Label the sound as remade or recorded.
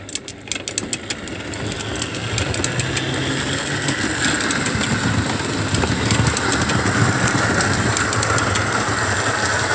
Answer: recorded